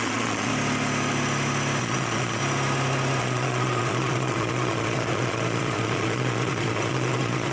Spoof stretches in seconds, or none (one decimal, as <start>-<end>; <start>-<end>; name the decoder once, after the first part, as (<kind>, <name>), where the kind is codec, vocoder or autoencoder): 0.0-0.5 (vocoder, Vocos); 1.8-2.4; 3.2-7.5